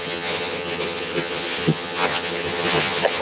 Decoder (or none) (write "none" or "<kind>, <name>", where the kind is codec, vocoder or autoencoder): vocoder, HiFi-GAN